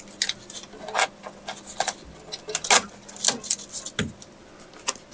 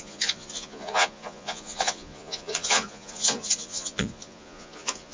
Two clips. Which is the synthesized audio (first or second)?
second